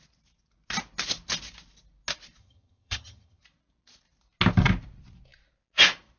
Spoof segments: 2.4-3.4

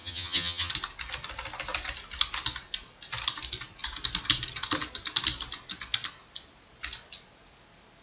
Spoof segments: 0.0-0.7

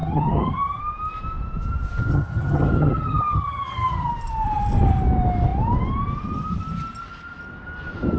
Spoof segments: 0.0-0.8; 2.1-4.1

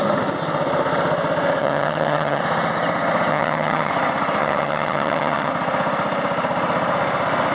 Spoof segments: 1.6-2.4; 3.3-3.9; 4.4-5.5

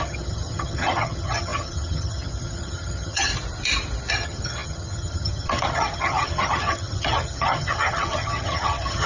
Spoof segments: 0.0-3.3; 4.1-9.1